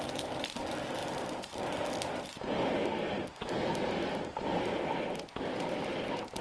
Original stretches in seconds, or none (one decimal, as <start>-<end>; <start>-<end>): 0.0-6.4